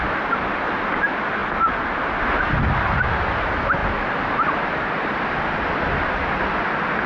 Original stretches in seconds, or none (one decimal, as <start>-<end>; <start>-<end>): 0.0-7.1